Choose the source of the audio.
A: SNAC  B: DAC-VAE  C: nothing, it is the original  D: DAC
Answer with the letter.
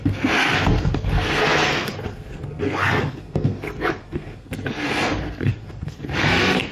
A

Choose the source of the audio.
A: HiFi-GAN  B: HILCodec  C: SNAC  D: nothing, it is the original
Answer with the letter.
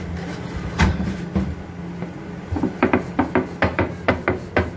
D